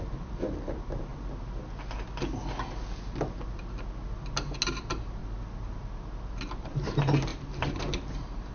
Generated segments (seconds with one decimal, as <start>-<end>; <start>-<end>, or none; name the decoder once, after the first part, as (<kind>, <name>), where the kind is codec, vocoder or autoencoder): 0.0-1.1 (vocoder, BigVGAN v2); 4.7-5.2; 6.6-8.5